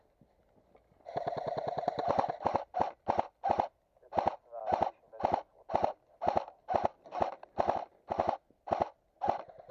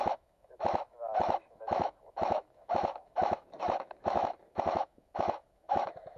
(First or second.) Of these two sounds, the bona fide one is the first